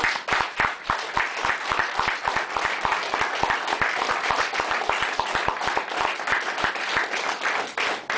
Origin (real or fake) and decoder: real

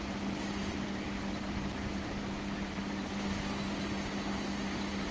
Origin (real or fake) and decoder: real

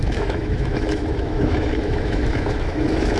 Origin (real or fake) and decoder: fake, autoencoder, DAC-VAE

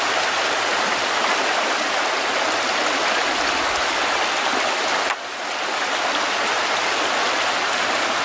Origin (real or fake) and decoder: real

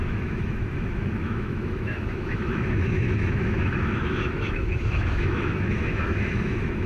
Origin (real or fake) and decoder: fake, autoencoder, DAC-VAE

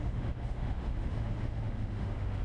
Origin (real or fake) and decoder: fake, autoencoder, DAC-VAE